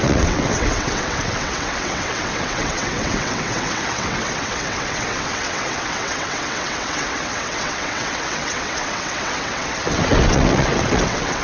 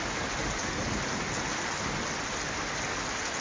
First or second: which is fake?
first